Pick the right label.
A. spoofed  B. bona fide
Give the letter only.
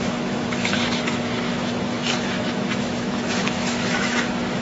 A